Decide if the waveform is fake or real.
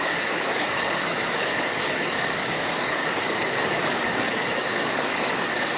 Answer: fake